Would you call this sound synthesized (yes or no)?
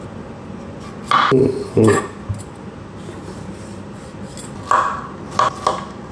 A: no